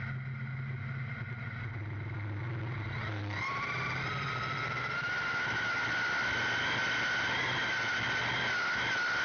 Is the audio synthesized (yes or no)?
no